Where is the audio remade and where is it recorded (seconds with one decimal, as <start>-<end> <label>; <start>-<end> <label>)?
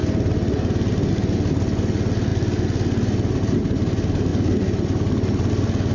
0.0-5.9 recorded